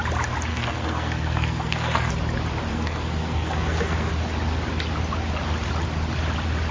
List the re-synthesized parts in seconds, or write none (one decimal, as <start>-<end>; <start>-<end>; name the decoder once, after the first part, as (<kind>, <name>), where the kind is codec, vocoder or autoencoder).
0.5-2.1 (codec, SNAC); 2.7-4.1